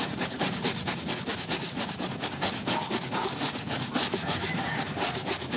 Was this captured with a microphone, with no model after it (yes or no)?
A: no